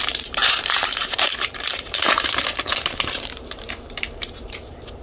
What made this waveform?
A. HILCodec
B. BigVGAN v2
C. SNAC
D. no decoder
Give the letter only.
B